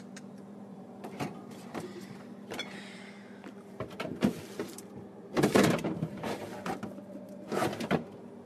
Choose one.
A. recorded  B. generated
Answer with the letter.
B